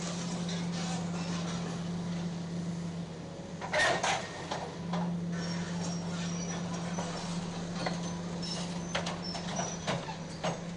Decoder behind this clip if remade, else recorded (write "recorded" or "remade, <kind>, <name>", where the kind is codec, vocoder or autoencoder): recorded